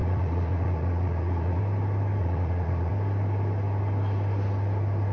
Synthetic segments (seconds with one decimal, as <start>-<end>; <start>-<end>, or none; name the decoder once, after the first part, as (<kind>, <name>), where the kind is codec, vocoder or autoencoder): 0.0-1.6 (vocoder, Vocos); 2.2-2.9